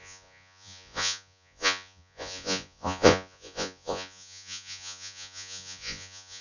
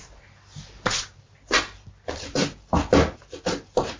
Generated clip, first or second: first